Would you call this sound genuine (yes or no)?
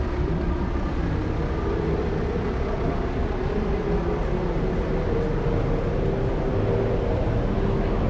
yes